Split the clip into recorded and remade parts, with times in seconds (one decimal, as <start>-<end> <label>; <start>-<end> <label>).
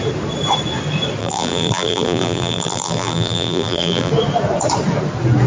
0.0-1.2 recorded; 1.2-4.1 remade; 4.1-5.5 recorded